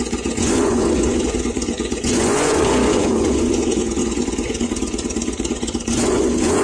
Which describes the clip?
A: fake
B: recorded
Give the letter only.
A